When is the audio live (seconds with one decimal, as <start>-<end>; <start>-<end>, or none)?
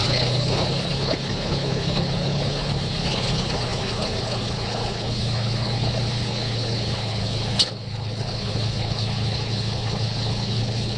none